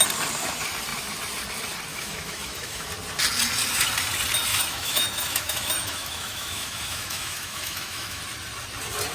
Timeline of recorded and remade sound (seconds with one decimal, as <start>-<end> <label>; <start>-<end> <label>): 0.0-1.9 recorded; 1.9-2.9 remade; 2.9-4.5 recorded; 4.5-8.2 remade; 8.2-9.1 recorded